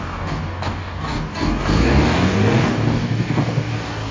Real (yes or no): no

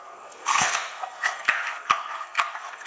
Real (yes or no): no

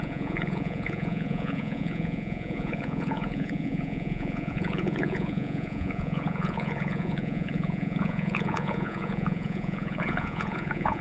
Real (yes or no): no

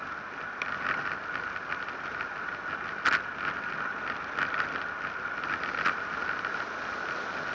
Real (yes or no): yes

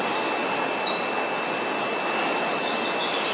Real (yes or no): yes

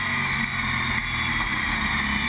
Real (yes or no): yes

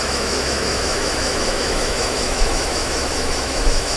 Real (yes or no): no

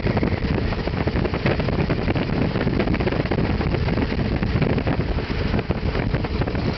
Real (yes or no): yes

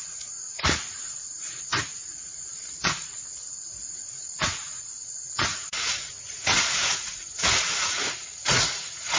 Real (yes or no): no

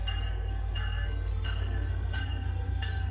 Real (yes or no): no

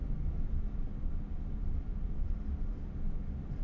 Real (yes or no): yes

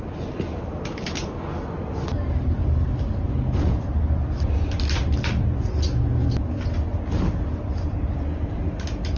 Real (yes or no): yes